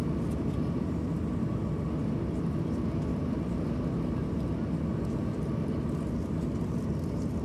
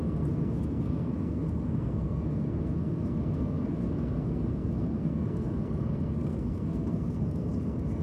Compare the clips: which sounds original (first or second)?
first